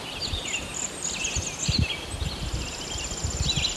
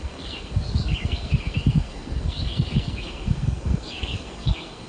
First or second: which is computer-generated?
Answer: second